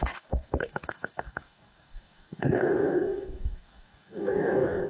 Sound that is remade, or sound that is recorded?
remade